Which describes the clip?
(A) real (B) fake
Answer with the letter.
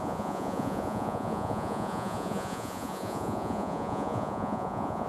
B